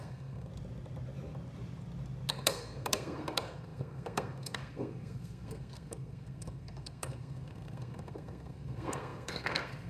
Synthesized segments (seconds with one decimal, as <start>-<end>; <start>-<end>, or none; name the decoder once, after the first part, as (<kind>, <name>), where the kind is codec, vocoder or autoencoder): 0.0-0.5 (codec, SNAC); 2.3-9.9